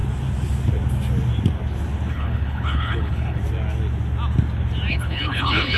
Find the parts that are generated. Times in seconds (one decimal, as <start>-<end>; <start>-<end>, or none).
2.1-3.4; 4.9-5.8

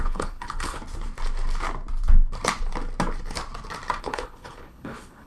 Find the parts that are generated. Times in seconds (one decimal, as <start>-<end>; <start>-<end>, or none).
0.0-0.8; 4.0-5.3

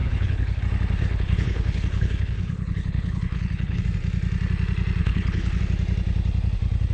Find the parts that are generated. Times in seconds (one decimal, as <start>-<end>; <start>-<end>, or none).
0.0-0.6; 1.0-3.8; 5.0-5.6

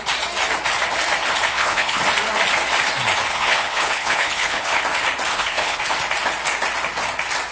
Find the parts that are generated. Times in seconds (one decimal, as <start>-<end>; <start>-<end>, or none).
1.5-2.0; 3.3-4.8; 5.3-5.8

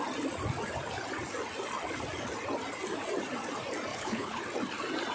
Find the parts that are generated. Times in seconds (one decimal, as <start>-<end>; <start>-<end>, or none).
3.9-4.4

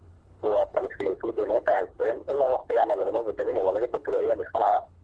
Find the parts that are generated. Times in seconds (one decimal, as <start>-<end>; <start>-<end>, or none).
0.0-5.0

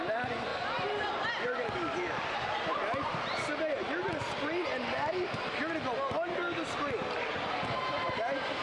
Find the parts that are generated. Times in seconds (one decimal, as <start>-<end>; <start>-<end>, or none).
none